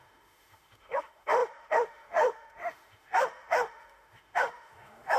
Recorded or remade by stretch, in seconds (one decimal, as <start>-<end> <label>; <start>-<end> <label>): 0.0-5.2 remade